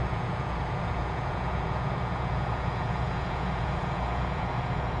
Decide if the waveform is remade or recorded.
remade